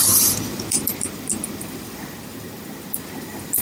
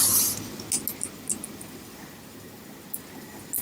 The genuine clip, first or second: second